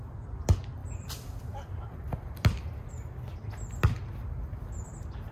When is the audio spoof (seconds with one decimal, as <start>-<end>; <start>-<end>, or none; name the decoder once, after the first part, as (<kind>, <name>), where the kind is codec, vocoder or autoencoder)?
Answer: none